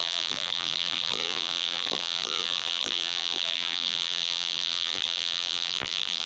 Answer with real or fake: fake